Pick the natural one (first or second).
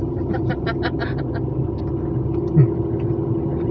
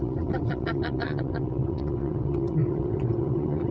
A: first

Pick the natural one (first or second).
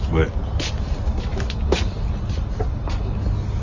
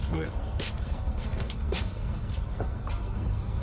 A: first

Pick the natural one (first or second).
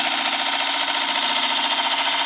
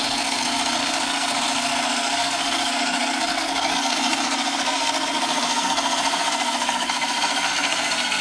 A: first